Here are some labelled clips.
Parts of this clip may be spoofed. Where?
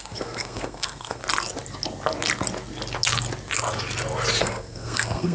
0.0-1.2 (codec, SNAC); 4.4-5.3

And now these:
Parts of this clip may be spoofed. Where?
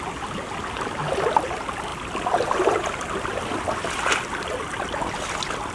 1.9-5.3 (vocoder, BigVGAN v2)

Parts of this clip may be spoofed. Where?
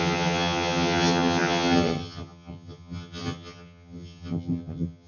0.0-5.1 (vocoder, HiFi-GAN)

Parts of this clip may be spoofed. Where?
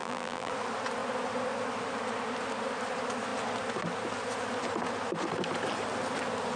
0.0-0.5 (vocoder, BigVGAN v2)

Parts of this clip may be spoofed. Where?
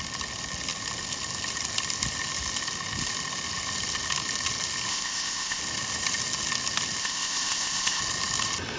4.9-5.6 (codec, ZipCodec); 7.0-8.0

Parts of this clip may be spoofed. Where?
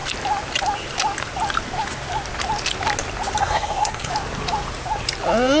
3.4-4.1 (codec, SNAC)